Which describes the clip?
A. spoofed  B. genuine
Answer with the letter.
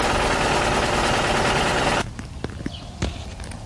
B